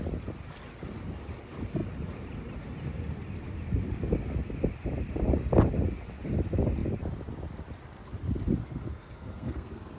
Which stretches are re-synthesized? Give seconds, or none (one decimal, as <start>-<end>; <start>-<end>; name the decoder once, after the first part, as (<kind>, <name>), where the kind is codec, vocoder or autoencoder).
8.6-10.0 (codec, SNAC)